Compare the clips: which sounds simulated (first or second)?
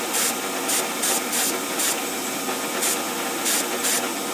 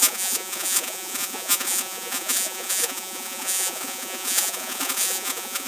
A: second